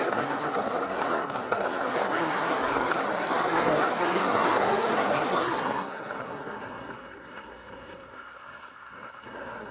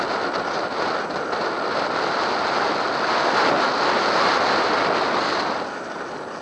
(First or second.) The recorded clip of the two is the second